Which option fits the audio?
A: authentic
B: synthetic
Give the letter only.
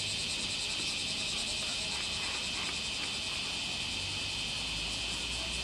A